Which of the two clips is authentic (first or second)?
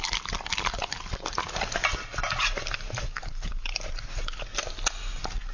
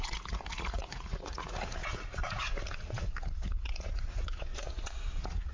first